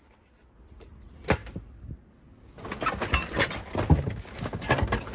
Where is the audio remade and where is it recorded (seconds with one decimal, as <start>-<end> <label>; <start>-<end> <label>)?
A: 0.0-5.1 recorded